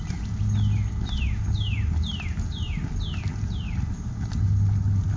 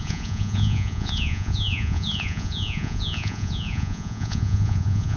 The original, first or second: first